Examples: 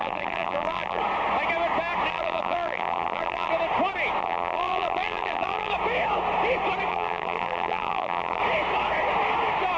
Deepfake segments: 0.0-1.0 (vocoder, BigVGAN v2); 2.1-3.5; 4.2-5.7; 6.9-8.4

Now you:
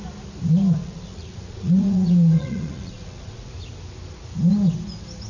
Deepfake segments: 0.8-3.5 (vocoder, Vocos)

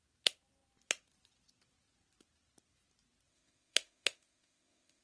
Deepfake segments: 3.3-5.0 (autoencoder, DAC-VAE)

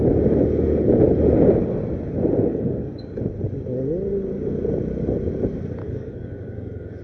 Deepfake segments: 2.5-3.2 (codec, DAC); 5.8-7.0

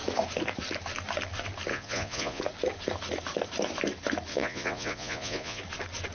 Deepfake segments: 1.7-2.4 (vocoder, Vocos); 4.3-5.6

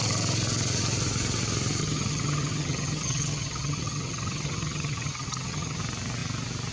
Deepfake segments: 1.8-5.8 (vocoder, HiFi-GAN)